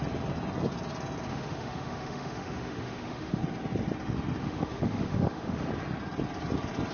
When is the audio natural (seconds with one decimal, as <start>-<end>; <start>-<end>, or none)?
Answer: 0.0-1.3; 3.4-4.4; 5.7-6.9